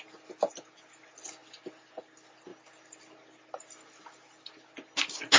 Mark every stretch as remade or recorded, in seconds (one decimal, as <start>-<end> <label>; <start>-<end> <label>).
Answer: 0.0-5.4 recorded

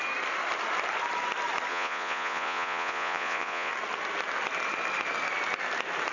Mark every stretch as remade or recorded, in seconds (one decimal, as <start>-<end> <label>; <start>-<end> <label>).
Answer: 0.0-1.7 recorded; 1.7-3.7 remade; 3.7-6.1 recorded

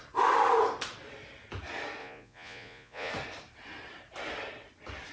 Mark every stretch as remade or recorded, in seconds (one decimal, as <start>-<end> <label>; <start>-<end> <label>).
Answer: 0.0-2.0 recorded; 2.0-3.1 remade; 3.1-5.1 recorded

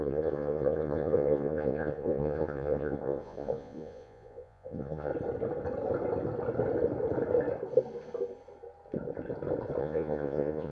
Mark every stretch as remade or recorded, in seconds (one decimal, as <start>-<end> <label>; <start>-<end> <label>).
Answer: 0.0-5.1 remade; 5.1-9.8 recorded; 9.8-10.7 remade

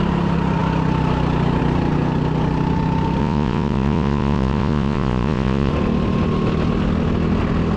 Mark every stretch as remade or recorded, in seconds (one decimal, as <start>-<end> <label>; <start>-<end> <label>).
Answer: 0.0-3.2 recorded; 3.2-5.7 remade; 5.7-7.8 recorded